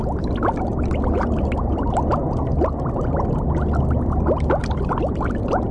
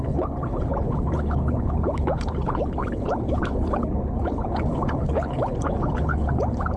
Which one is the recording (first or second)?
first